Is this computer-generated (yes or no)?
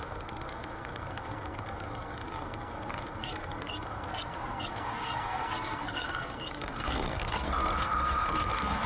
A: yes